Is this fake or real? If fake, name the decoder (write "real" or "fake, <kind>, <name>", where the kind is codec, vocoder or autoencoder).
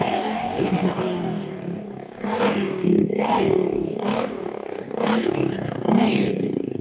fake, codec, DAC